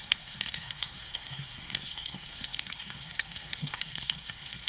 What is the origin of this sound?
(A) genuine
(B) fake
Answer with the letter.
B